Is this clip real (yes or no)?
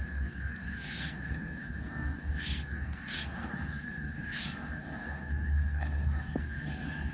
no